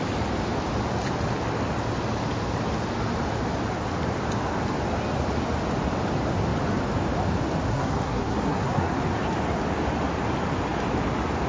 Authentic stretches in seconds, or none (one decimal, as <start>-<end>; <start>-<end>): 0.0-7.7; 9.0-11.5